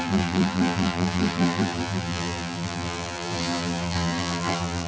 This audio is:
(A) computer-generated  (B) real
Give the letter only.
A